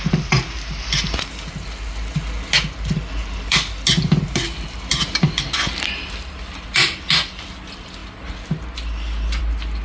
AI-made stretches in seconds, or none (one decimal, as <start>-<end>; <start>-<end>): none